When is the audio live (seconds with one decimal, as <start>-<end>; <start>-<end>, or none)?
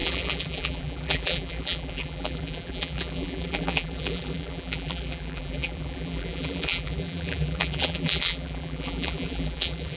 none